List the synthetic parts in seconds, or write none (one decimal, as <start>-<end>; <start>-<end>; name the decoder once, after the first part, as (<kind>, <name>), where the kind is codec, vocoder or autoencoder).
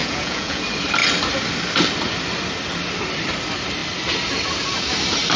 0.0-0.6 (vocoder, Vocos)